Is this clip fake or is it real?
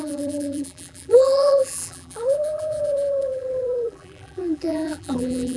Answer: fake